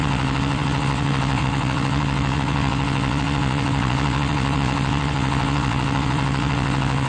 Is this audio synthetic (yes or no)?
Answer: yes